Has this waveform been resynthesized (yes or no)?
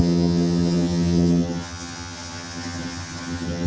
yes